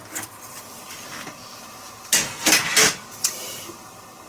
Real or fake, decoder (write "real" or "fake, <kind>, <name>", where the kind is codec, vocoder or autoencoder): real